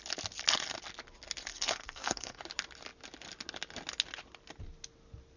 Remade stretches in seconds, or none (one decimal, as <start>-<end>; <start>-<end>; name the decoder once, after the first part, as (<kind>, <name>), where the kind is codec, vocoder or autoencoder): 1.5-2.4 (codec, SNAC)